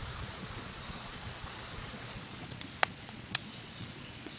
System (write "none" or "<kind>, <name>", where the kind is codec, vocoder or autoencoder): vocoder, Vocos